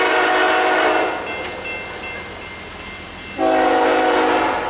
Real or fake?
real